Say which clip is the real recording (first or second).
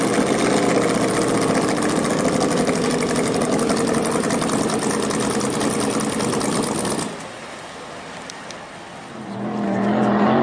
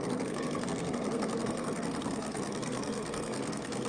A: first